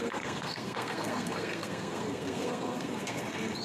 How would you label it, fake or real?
fake